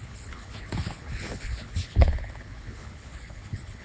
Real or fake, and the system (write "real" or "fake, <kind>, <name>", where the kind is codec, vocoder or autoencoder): fake, codec, HILCodec